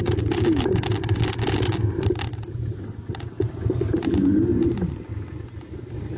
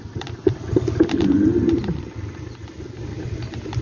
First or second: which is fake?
second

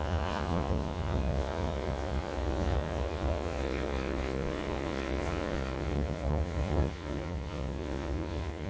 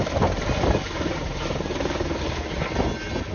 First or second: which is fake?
first